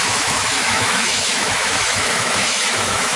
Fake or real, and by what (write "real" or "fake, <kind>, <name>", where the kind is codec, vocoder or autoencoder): fake, autoencoder, DAC-VAE